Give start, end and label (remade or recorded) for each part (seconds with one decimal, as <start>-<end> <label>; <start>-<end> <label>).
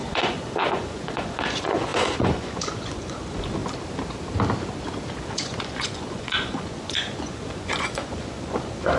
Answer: 0.0-3.6 remade; 3.6-5.3 recorded; 5.3-9.0 remade